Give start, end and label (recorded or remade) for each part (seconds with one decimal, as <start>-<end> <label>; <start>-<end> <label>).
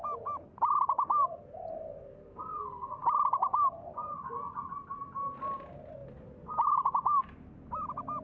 0.0-8.2 recorded